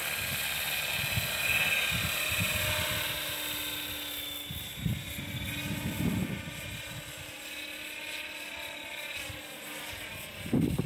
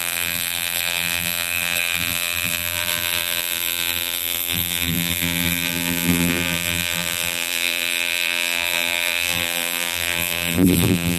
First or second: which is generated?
second